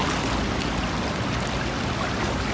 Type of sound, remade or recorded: recorded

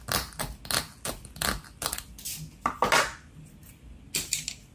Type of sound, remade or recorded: recorded